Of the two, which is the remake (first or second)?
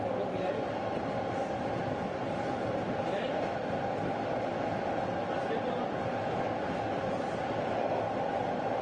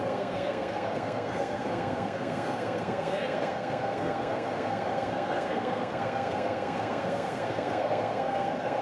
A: second